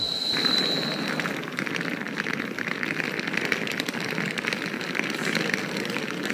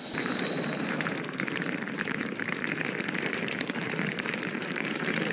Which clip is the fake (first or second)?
second